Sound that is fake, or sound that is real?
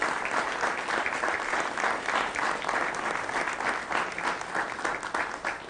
real